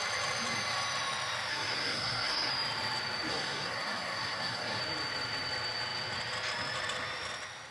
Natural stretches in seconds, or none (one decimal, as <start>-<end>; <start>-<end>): 0.0-1.5; 2.5-3.3; 4.8-7.7